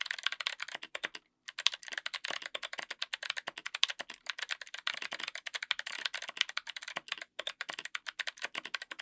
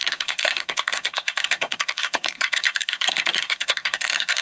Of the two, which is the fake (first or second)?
second